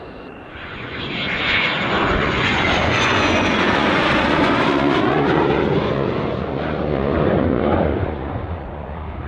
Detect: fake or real fake